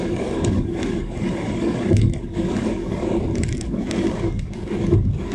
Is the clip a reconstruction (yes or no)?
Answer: yes